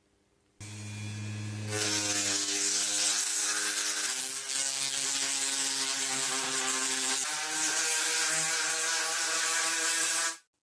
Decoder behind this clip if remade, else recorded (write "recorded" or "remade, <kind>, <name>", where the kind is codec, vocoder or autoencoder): recorded